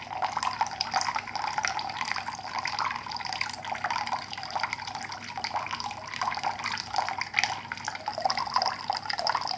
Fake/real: real